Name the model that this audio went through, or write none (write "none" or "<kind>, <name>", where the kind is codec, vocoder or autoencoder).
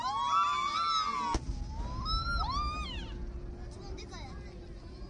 none